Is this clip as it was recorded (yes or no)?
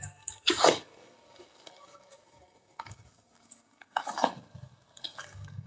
no